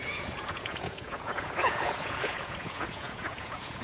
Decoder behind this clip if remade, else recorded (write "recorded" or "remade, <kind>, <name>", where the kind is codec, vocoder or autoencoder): remade, vocoder, Vocos